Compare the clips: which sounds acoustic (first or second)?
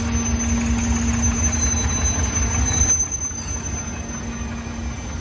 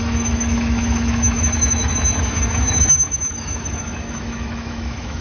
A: first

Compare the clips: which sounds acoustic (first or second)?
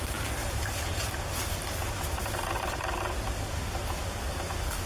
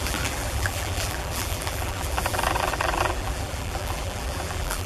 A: first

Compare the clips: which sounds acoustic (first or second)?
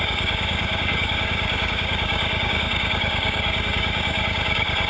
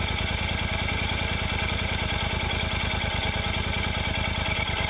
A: second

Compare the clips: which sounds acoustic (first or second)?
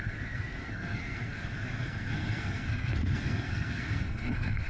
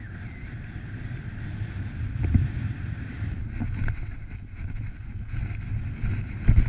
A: second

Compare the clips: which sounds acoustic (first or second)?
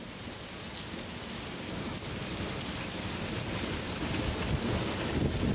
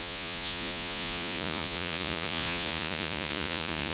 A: first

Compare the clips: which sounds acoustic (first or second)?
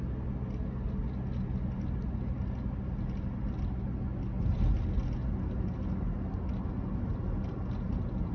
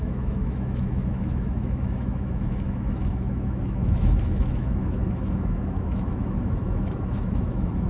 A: first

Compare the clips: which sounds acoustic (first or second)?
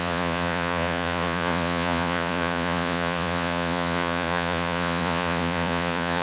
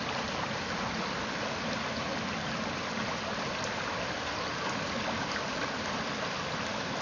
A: second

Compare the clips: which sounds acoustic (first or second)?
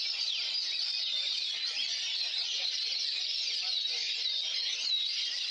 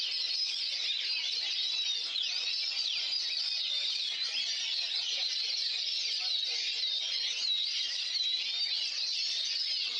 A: second